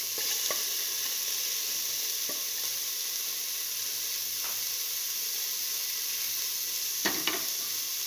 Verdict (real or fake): real